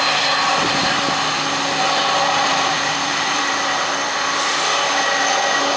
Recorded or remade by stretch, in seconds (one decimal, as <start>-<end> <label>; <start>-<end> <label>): 0.0-0.5 recorded; 0.5-1.0 remade; 1.0-2.0 recorded; 2.0-3.4 remade; 3.4-5.8 recorded